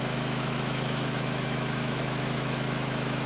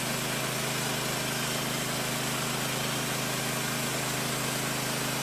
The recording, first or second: second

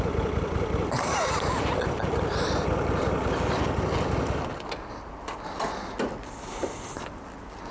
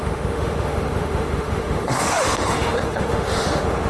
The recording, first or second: first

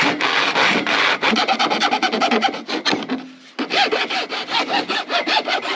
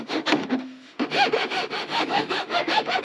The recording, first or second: first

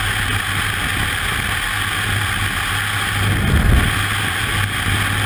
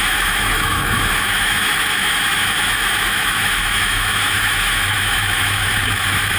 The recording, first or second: first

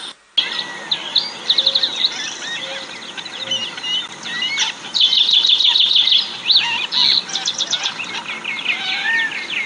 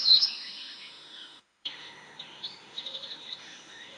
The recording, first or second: first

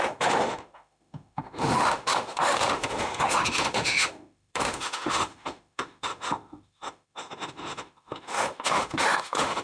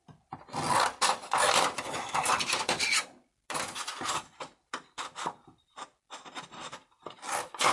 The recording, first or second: second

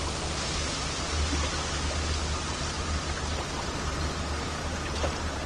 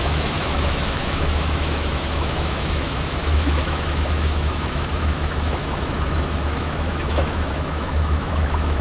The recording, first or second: first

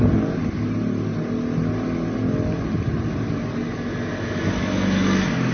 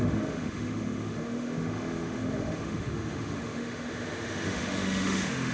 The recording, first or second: first